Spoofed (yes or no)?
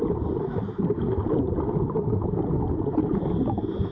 no